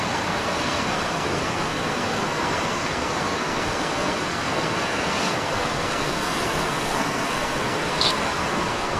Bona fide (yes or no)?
no